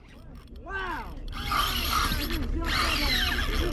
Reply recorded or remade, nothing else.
recorded